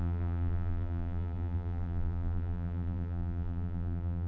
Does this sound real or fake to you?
fake